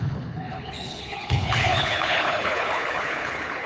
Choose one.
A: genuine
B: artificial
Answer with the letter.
B